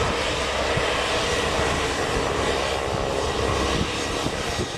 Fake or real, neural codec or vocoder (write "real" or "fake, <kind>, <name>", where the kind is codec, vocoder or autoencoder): real